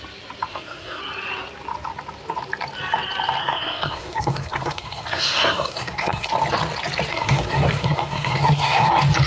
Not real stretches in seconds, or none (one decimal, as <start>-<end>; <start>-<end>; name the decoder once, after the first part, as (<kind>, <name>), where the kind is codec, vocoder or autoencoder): 0.5-1.0 (codec, SNAC); 3.4-6.3; 7.1-8.9